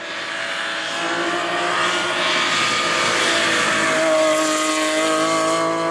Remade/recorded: recorded